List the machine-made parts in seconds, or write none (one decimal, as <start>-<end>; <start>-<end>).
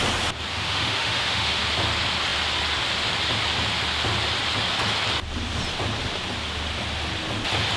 0.5-1.6